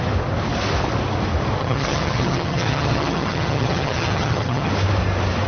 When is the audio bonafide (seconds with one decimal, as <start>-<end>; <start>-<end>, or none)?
0.0-1.6; 4.7-5.5